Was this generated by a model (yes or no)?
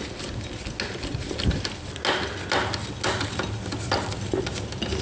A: no